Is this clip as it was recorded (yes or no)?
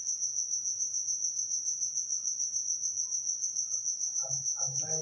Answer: yes